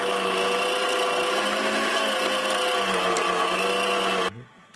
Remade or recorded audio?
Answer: recorded